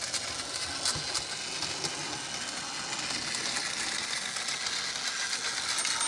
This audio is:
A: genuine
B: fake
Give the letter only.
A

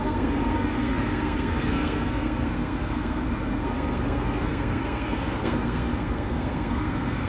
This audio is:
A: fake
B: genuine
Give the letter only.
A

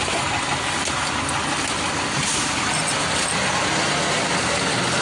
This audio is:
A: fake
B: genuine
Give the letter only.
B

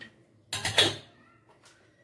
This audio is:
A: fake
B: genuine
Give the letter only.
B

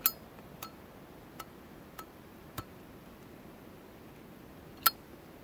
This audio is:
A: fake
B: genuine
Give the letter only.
B